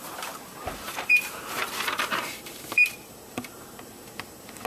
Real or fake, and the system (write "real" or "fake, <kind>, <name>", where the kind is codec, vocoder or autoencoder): fake, vocoder, BigVGAN v2